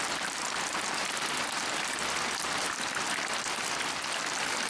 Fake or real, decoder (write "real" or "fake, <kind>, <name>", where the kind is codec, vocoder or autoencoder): real